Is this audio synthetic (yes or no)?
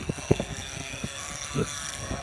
yes